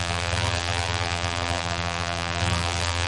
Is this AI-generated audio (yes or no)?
yes